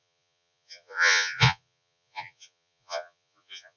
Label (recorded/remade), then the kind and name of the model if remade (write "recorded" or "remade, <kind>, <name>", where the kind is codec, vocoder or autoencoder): remade, vocoder, Vocos